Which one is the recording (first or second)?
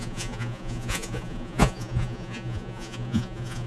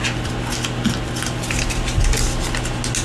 second